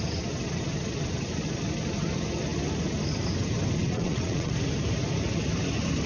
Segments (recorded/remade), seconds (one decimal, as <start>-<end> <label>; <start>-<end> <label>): 0.0-3.8 recorded; 3.8-4.5 remade; 4.5-6.1 recorded